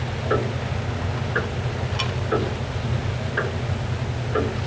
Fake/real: real